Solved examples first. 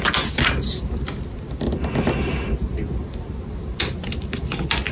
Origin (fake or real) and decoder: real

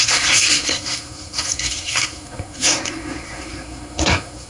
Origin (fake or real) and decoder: fake, codec, SNAC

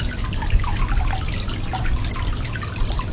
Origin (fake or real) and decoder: real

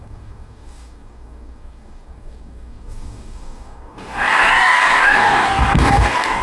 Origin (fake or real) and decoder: fake, codec, DAC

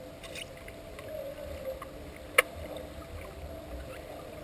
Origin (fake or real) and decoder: real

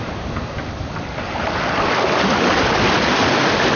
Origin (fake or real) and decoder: real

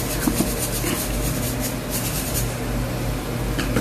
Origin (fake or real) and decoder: real